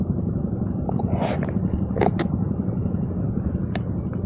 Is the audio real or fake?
real